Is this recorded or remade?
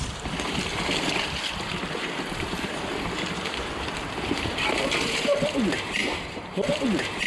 remade